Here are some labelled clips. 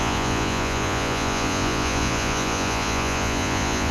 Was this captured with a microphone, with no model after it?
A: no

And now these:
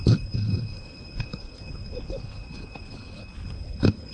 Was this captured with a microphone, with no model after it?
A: no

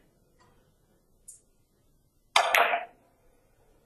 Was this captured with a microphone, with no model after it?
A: yes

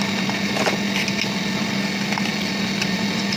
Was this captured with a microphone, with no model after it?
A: yes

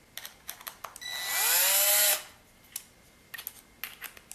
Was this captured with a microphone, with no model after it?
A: yes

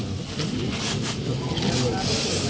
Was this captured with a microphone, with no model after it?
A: yes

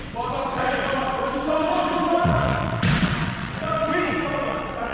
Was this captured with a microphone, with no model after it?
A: no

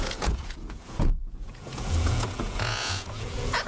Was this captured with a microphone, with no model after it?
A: no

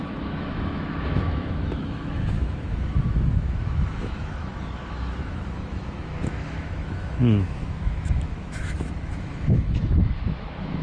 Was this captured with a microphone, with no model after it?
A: no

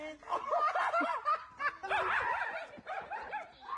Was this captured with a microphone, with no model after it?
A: yes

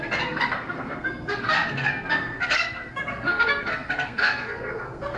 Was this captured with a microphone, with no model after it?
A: no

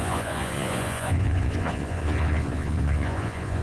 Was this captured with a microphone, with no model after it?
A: no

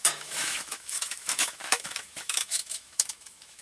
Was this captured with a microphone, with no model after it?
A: no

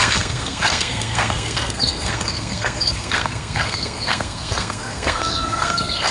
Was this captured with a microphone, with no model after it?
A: no